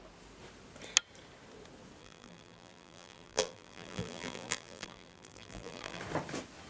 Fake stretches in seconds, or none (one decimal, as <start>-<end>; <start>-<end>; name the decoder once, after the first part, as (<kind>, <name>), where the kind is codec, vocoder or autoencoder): 2.0-6.0 (vocoder, BigVGAN v2)